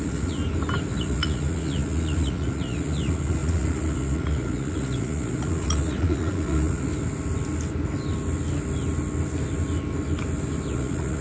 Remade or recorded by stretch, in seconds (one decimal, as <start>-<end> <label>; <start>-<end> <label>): 0.0-0.4 remade; 0.4-1.0 recorded; 1.0-6.9 remade; 6.9-10.7 recorded; 10.7-11.2 remade